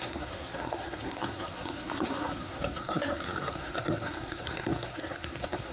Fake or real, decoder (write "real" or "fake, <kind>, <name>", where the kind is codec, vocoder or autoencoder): fake, codec, SNAC